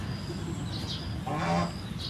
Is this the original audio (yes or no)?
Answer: yes